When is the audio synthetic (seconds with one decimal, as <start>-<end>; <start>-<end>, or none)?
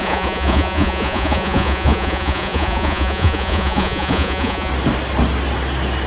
0.0-4.7